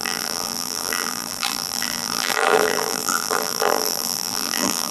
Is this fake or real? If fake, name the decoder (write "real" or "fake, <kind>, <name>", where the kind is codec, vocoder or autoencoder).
fake, vocoder, BigVGAN v2